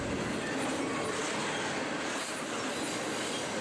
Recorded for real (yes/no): yes